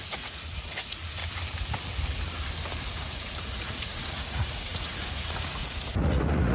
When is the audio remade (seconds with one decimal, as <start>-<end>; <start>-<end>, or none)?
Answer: 0.0-1.2; 2.9-6.5